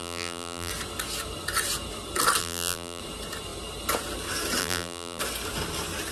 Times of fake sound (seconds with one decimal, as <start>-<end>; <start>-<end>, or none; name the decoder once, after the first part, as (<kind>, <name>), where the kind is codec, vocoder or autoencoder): 0.0-0.7 (vocoder, BigVGAN v2); 2.4-3.0; 4.6-5.2